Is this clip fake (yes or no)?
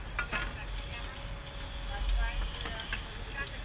no